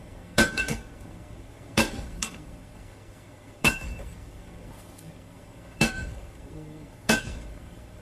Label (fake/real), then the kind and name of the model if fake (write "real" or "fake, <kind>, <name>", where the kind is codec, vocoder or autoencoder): fake, codec, SNAC